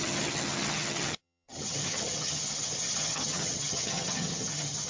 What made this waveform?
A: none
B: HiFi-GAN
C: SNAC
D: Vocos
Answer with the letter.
B